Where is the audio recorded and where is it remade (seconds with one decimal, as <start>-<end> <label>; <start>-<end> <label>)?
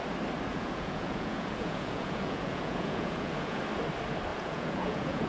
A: 0.0-0.5 recorded; 0.5-3.6 remade; 3.6-4.3 recorded; 4.3-5.3 remade